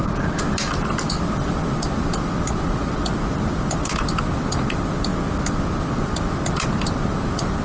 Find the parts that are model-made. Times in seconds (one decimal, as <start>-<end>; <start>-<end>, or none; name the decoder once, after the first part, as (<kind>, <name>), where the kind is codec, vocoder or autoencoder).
0.0-5.1 (vocoder, BigVGAN v2); 5.7-7.6